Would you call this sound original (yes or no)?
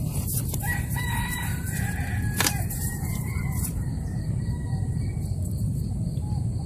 no